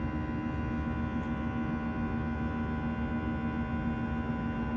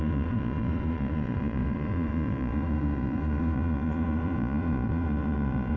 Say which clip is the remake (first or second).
second